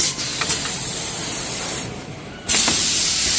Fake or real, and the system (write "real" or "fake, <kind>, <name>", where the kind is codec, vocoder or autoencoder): fake, vocoder, BigVGAN v2